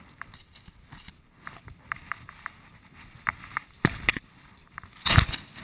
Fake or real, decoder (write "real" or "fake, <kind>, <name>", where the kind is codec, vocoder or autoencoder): real